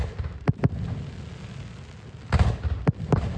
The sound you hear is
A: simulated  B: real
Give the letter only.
B